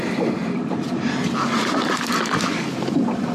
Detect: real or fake real